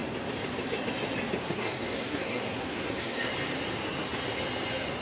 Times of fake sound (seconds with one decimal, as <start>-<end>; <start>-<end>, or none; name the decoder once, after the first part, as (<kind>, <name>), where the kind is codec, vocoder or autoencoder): 1.4-3.3 (codec, SNAC)